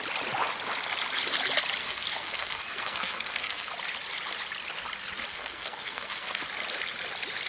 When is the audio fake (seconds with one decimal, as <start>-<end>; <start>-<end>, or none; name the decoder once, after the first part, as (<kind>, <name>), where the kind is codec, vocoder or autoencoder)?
1.8-3.7 (codec, SNAC); 5.3-6.4